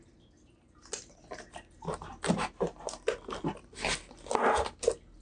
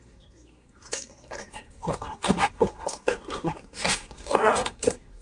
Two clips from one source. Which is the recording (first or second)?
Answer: first